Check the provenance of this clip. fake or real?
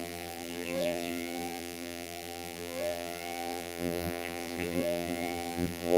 fake